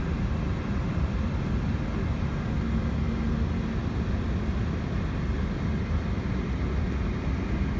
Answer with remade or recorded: recorded